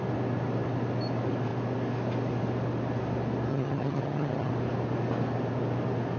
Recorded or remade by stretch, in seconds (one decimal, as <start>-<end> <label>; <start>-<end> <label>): 0.0-3.5 recorded; 3.5-4.5 remade; 4.5-6.2 recorded